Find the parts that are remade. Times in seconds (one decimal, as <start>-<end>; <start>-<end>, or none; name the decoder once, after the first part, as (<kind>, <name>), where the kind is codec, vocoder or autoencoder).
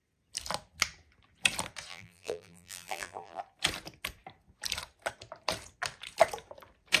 1.9-3.4 (vocoder, BigVGAN v2)